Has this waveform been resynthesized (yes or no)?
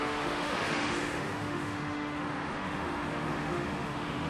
yes